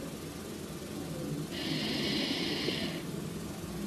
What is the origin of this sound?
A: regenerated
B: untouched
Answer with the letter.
B